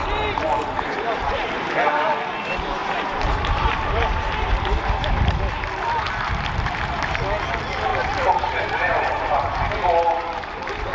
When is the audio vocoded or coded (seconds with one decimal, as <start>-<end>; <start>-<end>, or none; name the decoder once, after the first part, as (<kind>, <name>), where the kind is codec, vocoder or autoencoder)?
0.0-1.7 (vocoder, BigVGAN v2); 2.8-5.2; 7.9-9.7